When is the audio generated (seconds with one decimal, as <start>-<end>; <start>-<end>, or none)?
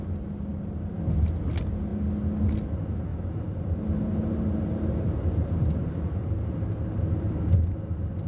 0.5-1.3; 3.1-7.5